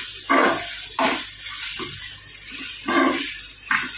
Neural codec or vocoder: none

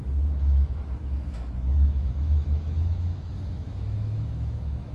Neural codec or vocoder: autoencoder, DAC-VAE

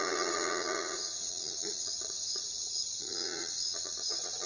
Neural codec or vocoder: vocoder, Vocos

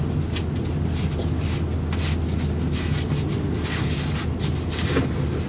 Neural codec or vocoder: none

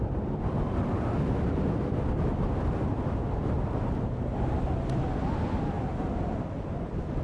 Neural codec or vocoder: none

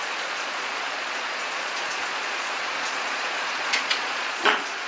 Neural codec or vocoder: vocoder, Vocos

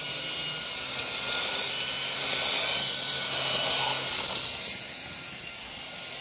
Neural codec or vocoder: none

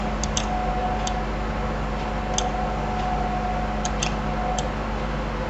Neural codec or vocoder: none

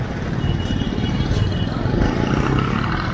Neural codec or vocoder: vocoder, BigVGAN v2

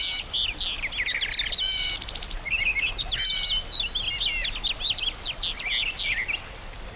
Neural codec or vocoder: none